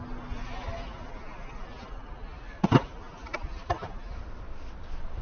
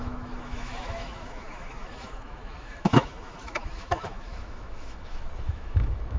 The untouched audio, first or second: first